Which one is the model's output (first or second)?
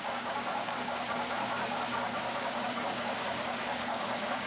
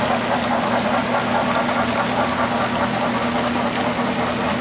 first